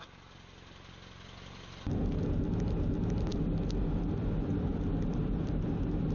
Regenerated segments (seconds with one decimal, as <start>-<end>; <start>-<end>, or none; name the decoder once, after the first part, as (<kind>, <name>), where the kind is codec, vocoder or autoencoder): none